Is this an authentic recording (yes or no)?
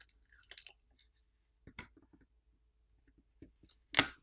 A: yes